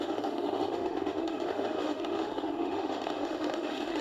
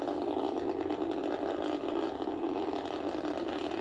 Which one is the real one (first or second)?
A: second